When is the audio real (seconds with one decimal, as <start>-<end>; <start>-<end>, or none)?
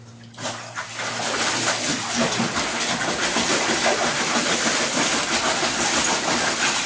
0.0-6.9